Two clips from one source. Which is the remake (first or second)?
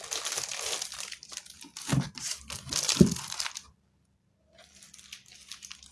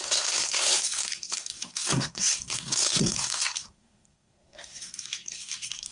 second